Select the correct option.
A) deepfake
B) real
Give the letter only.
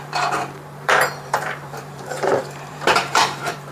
A